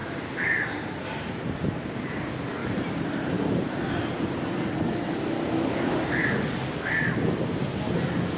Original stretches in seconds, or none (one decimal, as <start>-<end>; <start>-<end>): 2.2-2.6; 3.4-8.4